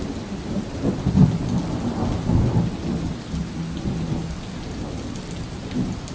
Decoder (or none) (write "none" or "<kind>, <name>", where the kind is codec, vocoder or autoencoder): none